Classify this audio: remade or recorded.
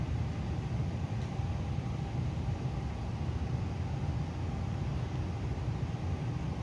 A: recorded